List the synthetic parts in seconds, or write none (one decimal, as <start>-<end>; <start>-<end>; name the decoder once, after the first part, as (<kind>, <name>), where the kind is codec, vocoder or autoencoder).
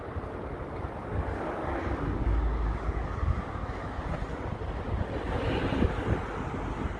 1.0-4.0 (codec, DAC)